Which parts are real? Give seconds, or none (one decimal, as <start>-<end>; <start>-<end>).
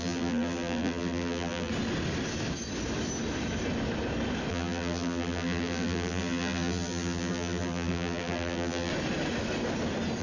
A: 1.7-4.5; 8.9-10.2